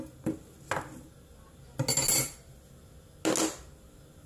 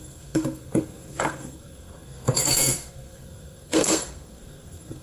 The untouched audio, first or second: first